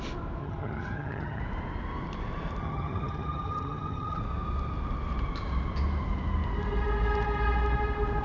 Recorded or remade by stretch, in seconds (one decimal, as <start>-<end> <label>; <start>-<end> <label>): 0.0-0.4 recorded; 0.4-1.4 remade; 1.4-2.6 recorded; 2.6-4.2 remade; 4.2-8.2 recorded